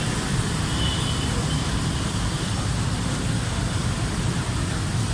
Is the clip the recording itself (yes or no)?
yes